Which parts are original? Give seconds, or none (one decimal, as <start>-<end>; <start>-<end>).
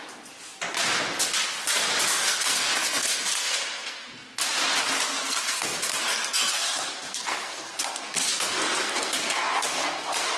0.0-2.1; 4.4-5.1